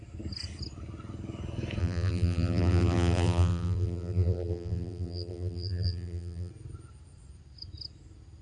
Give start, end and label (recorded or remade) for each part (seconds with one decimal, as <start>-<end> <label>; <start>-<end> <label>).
0.0-1.8 recorded; 1.8-6.5 remade; 6.5-8.4 recorded